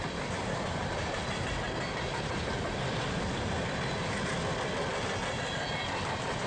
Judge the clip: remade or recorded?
recorded